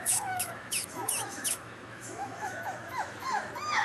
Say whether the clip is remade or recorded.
remade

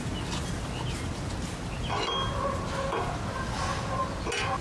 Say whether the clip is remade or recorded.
recorded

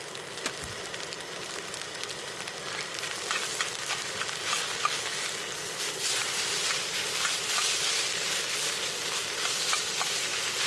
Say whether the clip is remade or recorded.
recorded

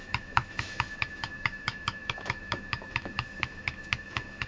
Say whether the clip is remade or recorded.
remade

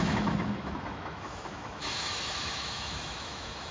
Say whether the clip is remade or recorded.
remade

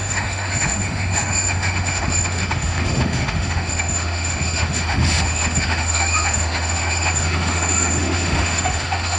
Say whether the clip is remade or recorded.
remade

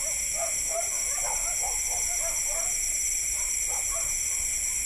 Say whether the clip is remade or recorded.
recorded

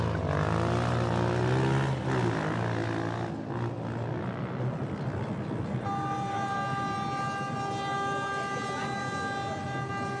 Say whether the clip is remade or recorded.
recorded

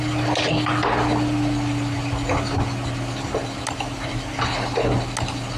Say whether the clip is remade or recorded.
recorded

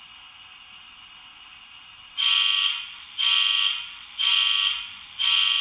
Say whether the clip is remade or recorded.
recorded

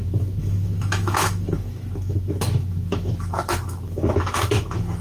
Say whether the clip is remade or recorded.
remade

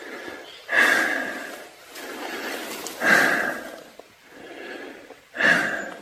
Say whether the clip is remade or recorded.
recorded